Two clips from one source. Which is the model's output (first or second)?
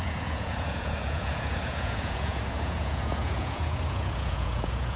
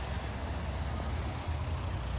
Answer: first